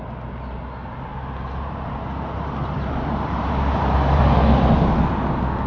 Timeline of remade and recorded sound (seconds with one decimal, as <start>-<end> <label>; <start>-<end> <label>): 0.0-0.8 recorded; 0.8-4.2 remade; 4.2-5.7 recorded